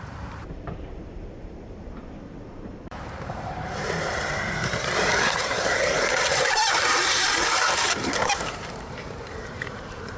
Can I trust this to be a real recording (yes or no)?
no